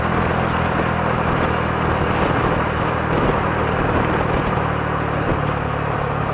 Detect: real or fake real